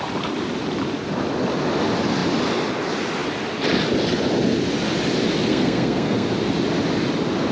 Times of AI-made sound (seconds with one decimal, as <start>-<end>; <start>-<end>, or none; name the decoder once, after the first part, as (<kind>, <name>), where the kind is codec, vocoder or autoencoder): 5.5-6.3 (codec, SNAC)